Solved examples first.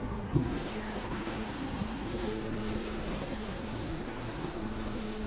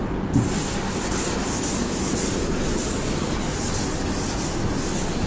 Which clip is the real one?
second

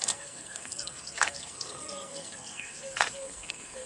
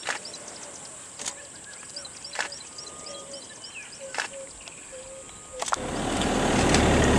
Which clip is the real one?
second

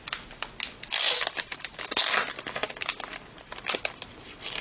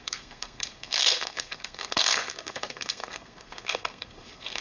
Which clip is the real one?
first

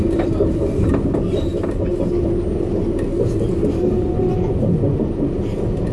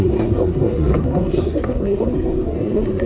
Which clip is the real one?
first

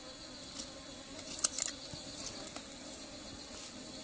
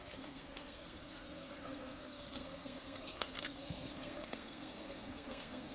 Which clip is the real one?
first